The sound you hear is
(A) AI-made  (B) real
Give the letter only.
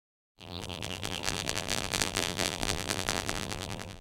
A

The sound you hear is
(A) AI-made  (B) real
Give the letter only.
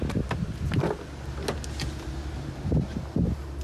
B